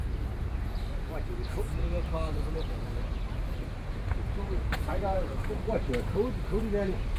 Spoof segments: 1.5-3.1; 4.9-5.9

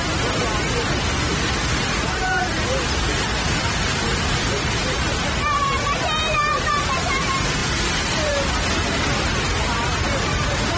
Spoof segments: none

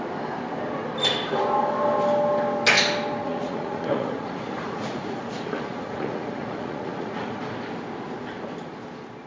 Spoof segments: 3.2-7.4